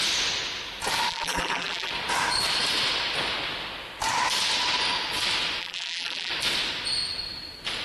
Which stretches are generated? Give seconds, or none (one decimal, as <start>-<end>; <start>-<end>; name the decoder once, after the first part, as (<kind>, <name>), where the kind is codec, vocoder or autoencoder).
1.1-1.9 (vocoder, BigVGAN v2); 5.6-6.3